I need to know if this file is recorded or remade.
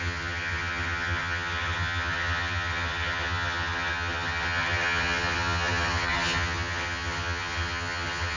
remade